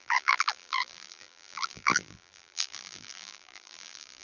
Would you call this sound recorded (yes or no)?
no